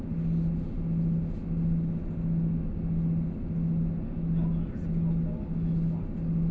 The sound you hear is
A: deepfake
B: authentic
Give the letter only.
B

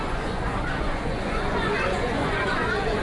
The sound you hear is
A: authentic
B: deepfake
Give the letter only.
B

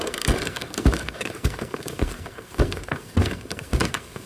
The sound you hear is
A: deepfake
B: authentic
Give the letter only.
A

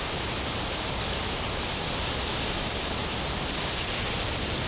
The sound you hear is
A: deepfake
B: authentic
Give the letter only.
B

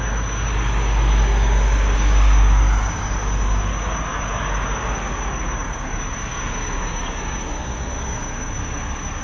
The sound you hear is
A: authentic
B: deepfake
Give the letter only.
B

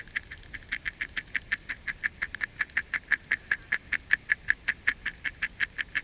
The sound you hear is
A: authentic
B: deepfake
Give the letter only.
A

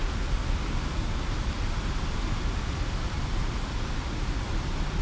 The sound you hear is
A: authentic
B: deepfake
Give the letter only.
A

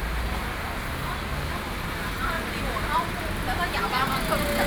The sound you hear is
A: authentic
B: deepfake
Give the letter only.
A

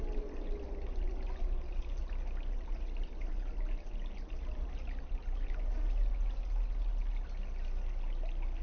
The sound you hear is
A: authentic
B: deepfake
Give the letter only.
A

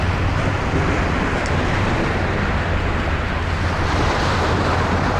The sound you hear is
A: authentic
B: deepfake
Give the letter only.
A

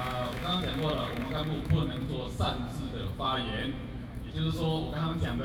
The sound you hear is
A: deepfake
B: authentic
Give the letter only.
A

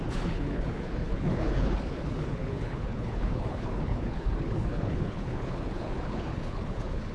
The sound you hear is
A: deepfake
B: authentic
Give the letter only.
A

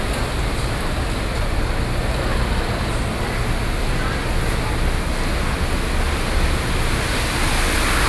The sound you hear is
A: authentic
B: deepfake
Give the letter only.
A